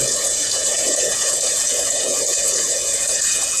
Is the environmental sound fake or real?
fake